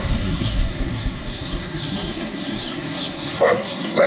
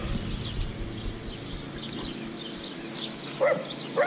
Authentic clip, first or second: second